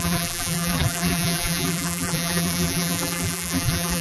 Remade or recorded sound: remade